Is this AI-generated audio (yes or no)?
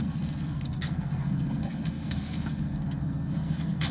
yes